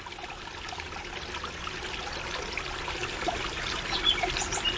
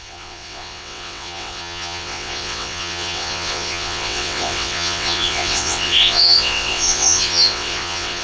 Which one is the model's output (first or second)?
second